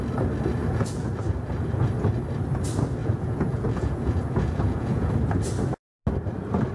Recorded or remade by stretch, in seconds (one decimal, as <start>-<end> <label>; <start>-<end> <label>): 0.0-0.6 recorded; 0.6-1.1 remade; 1.1-3.0 recorded; 3.0-5.1 remade; 5.1-6.7 recorded